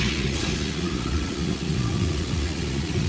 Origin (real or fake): fake